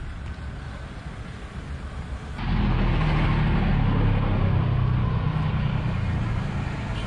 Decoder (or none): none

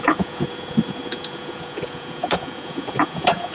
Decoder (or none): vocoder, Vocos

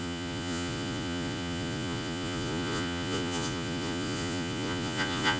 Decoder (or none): vocoder, Vocos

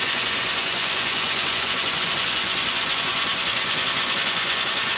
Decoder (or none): vocoder, Vocos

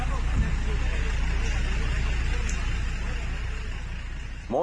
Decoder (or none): none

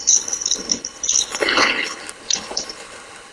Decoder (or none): codec, HILCodec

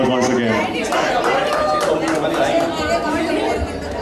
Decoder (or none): none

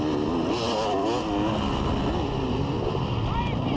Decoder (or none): none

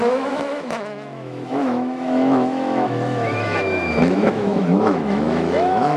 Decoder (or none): autoencoder, DAC-VAE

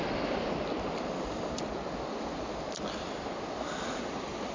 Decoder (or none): none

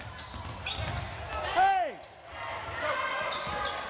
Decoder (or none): none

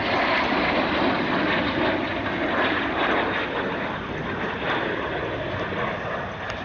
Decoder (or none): none